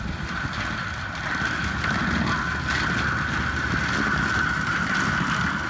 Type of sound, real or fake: real